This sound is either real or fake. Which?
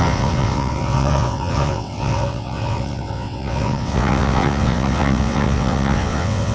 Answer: fake